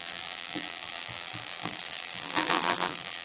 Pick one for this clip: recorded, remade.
remade